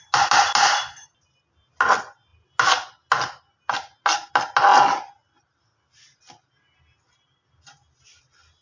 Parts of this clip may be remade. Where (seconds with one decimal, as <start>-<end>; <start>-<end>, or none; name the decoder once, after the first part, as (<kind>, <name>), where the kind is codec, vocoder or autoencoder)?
none